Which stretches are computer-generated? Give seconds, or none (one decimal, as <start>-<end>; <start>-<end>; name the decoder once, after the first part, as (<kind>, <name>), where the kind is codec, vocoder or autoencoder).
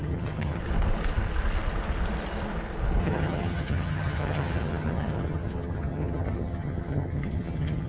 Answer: 0.0-0.6 (vocoder, HiFi-GAN); 3.0-7.9